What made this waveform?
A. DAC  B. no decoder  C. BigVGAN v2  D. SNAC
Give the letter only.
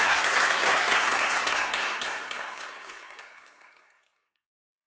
D